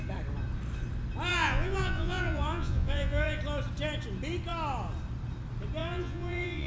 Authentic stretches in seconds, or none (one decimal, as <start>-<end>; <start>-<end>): 0.0-1.3; 3.4-5.8